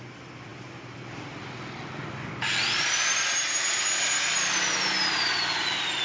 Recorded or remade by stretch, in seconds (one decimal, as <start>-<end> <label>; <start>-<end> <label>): 0.0-0.5 recorded; 0.5-2.3 remade; 2.3-3.6 recorded; 3.6-4.5 remade; 4.5-6.0 recorded